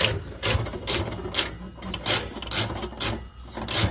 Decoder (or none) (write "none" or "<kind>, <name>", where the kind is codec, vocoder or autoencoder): none